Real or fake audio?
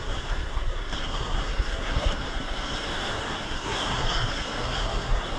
fake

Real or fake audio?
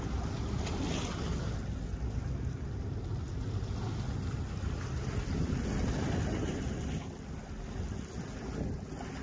real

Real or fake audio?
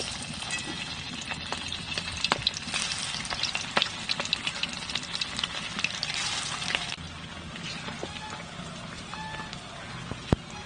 real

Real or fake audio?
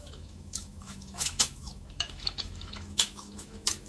fake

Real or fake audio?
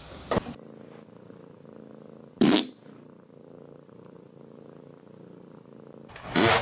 real